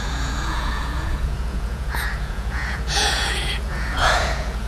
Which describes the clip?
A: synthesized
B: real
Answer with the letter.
A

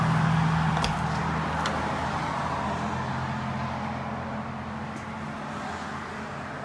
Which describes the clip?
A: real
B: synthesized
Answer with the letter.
A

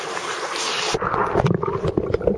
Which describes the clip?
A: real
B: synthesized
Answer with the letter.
A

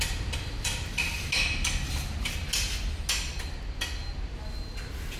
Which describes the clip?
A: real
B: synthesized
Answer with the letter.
A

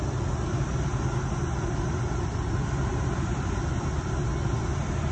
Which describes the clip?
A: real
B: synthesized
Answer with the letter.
A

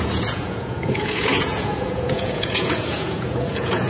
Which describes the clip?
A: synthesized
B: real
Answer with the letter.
A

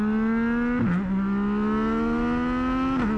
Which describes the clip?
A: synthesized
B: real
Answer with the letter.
B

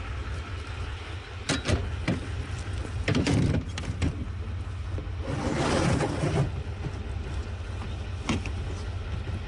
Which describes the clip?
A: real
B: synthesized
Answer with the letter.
A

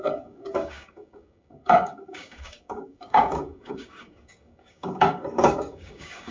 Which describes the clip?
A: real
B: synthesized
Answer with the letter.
B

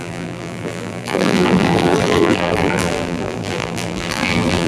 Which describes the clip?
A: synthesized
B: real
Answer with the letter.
A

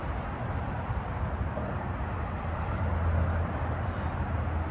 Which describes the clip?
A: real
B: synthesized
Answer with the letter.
A